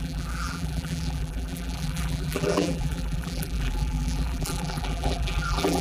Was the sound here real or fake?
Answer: fake